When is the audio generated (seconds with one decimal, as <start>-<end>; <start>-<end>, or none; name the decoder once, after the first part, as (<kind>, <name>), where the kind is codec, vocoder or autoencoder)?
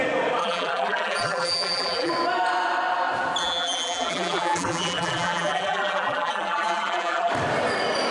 0.4-2.1 (vocoder, BigVGAN v2); 3.4-7.3